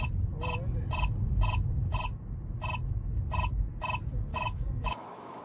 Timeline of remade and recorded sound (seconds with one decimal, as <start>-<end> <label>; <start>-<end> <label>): 0.0-4.3 recorded; 4.3-5.4 remade